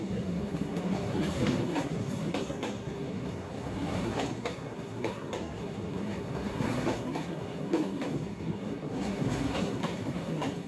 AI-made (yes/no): yes